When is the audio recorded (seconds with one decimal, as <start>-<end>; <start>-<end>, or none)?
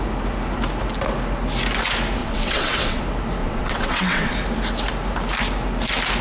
0.0-2.2; 3.0-3.4; 4.3-6.2